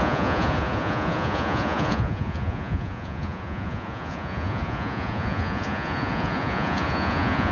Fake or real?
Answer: fake